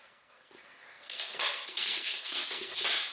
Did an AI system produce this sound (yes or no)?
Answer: yes